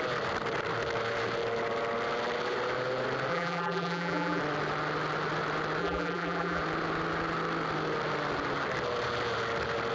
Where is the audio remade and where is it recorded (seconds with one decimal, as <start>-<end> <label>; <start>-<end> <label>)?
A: 0.0-3.3 recorded; 3.3-4.4 remade; 4.4-5.8 recorded; 5.8-6.6 remade; 6.6-9.9 recorded